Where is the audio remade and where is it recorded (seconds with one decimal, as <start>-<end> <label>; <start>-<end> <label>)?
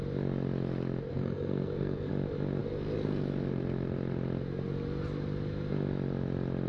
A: 0.0-1.1 recorded; 1.1-2.1 remade; 2.1-6.7 recorded